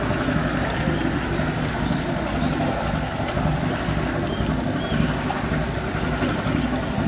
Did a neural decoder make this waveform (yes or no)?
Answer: no